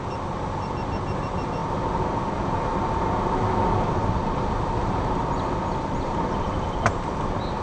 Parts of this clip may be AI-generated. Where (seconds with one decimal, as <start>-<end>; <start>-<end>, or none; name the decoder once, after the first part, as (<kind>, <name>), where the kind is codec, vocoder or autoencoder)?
none